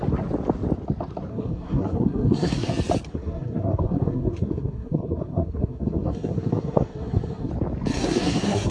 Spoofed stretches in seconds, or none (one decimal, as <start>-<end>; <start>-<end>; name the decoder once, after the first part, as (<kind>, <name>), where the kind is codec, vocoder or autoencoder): 1.3-2.7 (codec, SNAC); 3.1-7.5; 7.9-8.7